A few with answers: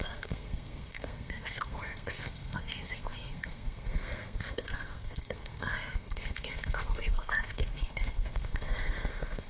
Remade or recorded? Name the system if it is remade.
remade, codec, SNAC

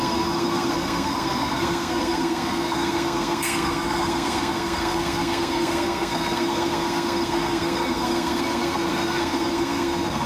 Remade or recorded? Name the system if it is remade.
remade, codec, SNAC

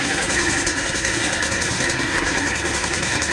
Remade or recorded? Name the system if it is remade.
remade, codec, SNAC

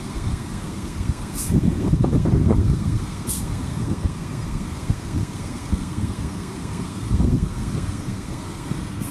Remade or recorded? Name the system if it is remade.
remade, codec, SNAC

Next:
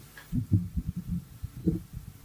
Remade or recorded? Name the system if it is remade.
recorded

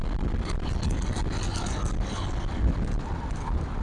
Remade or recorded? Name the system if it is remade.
recorded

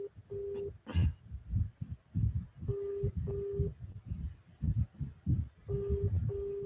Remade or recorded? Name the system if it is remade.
recorded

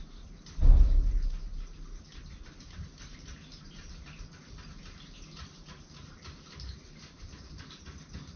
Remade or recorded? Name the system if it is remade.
recorded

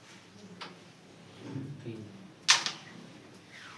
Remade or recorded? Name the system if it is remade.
recorded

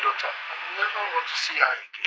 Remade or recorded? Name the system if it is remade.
remade, codec, SNAC